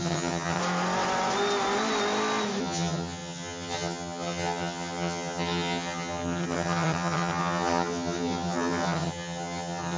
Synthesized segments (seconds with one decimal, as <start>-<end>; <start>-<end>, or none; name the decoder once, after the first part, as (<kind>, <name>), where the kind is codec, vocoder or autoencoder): 0.0-0.6 (vocoder, HiFi-GAN); 2.6-10.0